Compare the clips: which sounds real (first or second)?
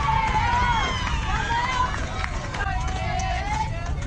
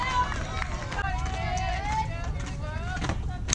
second